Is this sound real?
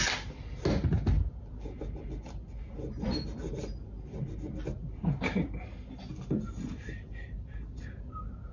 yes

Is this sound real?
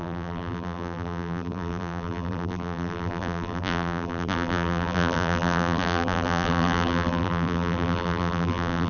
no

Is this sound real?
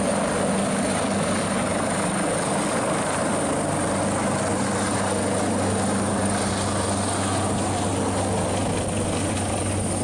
yes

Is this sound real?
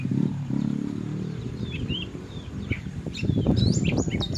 no